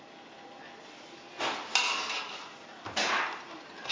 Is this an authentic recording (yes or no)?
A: yes